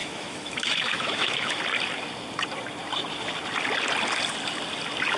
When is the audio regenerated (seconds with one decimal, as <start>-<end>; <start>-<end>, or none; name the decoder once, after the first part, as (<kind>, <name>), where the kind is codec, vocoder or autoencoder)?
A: 0.0-1.6 (autoencoder, DAC-VAE)

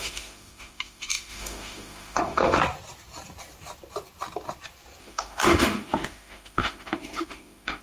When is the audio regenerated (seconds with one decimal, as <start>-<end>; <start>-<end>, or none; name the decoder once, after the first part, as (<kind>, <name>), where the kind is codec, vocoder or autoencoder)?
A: 0.0-2.6 (autoencoder, DAC-VAE); 5.0-7.8

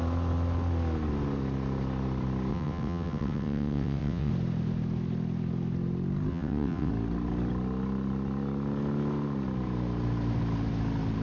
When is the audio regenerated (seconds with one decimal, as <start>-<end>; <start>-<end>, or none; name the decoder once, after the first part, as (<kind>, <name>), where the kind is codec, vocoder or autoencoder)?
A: 2.5-4.3 (vocoder, WaveNeXt); 6.3-6.9

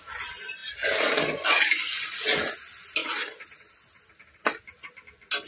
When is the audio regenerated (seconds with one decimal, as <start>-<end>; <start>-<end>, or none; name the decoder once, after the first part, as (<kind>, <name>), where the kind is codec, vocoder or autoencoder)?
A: none

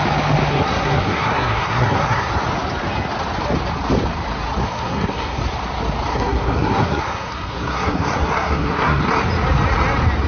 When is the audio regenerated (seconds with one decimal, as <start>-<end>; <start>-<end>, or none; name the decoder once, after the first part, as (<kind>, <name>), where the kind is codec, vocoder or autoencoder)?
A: 0.5-2.3 (codec, SNAC); 4.6-5.4; 6.1-9.0

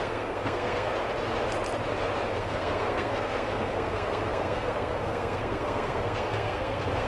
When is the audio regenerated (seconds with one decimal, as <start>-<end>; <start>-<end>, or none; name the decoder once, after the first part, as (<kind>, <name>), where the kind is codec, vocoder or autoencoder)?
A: 0.0-0.9 (codec, SNAC); 2.3-7.1

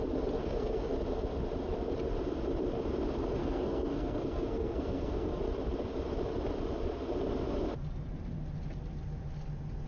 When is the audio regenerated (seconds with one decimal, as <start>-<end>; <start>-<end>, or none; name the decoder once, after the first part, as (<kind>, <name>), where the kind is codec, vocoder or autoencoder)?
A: 0.4-0.9 (codec, SNAC); 3.4-5.4